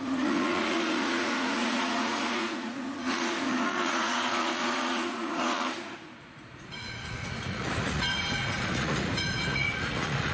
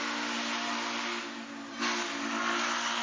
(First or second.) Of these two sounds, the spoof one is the first